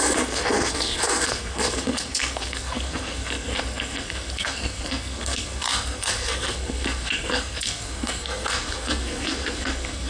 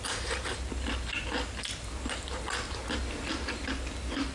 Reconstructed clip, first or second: first